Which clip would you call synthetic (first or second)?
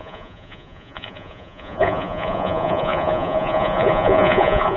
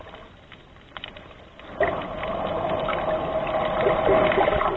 first